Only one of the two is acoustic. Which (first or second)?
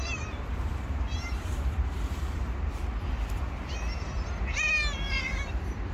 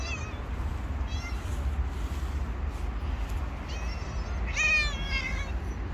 second